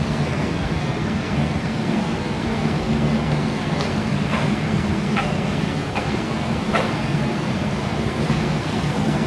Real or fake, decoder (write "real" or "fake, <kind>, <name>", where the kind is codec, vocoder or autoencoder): fake, codec, SNAC